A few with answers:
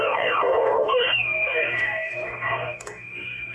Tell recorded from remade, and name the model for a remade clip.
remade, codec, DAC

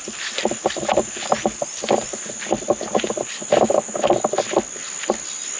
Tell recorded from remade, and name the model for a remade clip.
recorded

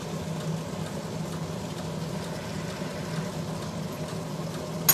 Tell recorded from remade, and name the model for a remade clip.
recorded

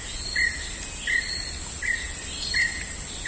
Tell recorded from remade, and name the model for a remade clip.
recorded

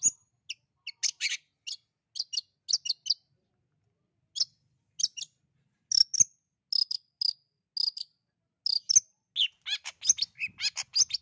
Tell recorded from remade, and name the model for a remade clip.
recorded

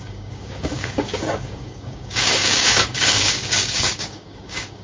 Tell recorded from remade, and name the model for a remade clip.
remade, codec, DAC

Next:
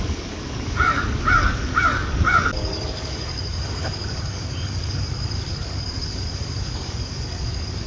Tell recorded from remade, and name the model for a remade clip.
remade, codec, DAC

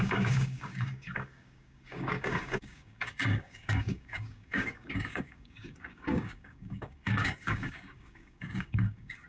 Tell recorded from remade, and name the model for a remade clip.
remade, codec, DAC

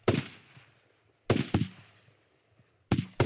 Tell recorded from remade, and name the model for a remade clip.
recorded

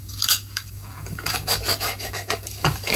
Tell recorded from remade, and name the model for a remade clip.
remade, codec, DAC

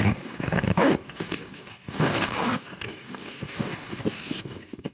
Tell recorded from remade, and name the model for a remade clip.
remade, codec, DAC